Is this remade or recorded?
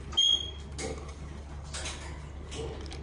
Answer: recorded